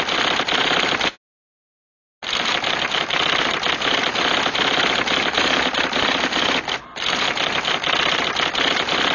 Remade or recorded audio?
recorded